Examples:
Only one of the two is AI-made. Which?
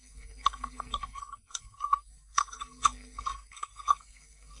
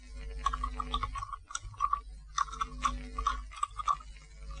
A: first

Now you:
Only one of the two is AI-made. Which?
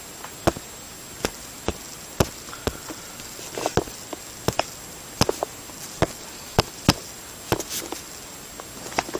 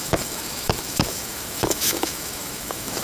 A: second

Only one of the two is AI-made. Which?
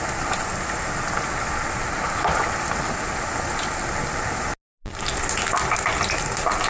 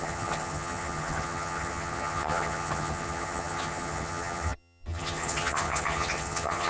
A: second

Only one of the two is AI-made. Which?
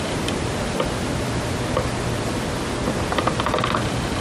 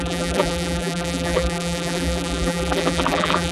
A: second